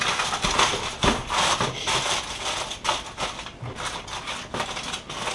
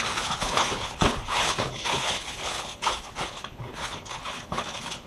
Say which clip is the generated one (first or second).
second